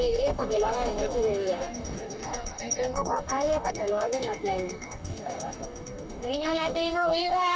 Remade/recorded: remade